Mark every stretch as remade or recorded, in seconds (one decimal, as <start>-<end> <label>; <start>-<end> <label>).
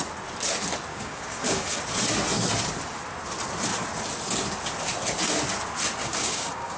0.0-0.9 recorded; 0.9-1.8 remade; 1.8-6.0 recorded; 6.0-6.8 remade